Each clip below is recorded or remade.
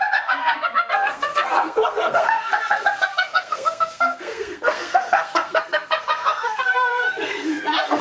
remade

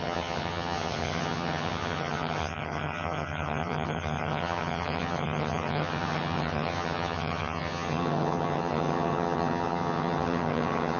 remade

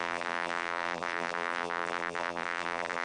remade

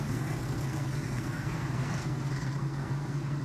remade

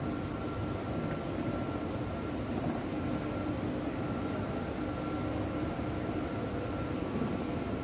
recorded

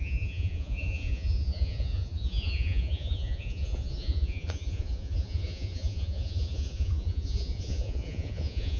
remade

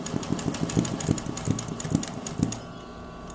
remade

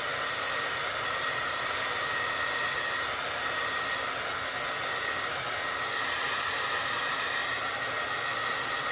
recorded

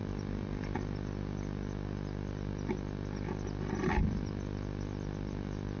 recorded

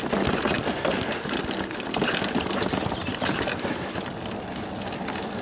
recorded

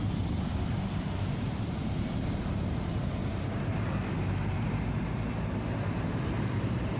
remade